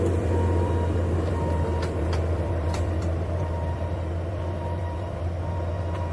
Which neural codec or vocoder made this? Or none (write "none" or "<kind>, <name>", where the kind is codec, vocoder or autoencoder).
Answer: vocoder, BigVGAN v2